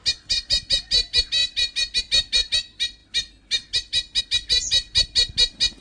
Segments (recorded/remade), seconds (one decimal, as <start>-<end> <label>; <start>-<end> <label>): 0.0-5.8 recorded